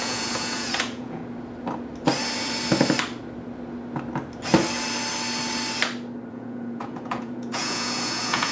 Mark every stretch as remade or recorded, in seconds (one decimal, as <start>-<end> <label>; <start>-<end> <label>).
0.0-1.2 remade; 1.2-6.3 recorded; 6.3-8.5 remade